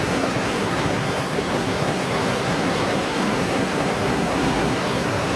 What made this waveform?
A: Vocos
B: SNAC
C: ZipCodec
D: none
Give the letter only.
B